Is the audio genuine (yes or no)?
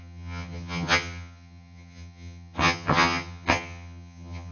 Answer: no